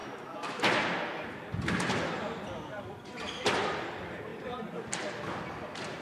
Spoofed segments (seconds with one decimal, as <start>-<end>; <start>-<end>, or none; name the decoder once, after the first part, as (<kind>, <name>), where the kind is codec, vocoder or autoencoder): none